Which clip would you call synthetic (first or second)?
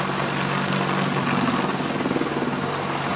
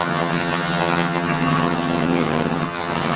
second